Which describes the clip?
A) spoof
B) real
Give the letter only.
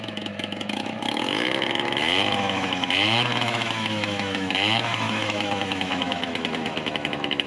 A